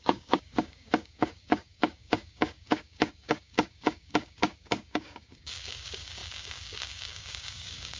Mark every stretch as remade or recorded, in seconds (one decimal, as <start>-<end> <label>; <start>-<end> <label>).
0.0-8.0 remade

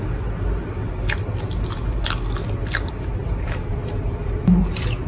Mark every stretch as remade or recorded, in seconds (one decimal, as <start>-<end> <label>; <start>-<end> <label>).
0.0-3.2 recorded; 3.2-4.5 remade; 4.5-5.1 recorded

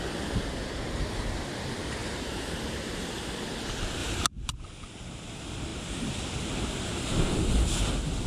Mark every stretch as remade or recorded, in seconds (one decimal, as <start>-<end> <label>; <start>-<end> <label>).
0.0-2.0 recorded; 2.0-3.1 remade; 3.1-4.0 recorded; 4.0-4.5 remade; 4.5-8.3 recorded

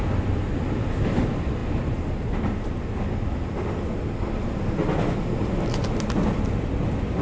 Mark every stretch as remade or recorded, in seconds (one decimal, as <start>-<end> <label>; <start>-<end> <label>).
0.0-7.2 recorded

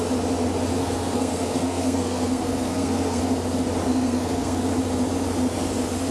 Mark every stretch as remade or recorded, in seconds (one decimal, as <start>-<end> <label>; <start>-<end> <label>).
0.0-0.8 recorded; 0.8-3.2 remade; 3.2-3.9 recorded; 3.9-4.7 remade; 4.7-6.1 recorded